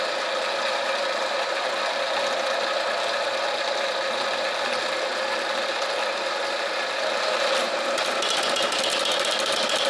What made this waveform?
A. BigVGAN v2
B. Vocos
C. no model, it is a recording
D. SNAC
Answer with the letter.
C